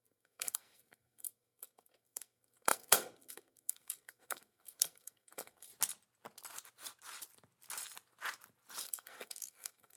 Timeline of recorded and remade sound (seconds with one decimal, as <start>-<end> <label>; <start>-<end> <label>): 0.0-5.7 remade; 5.7-8.8 recorded; 8.8-10.0 remade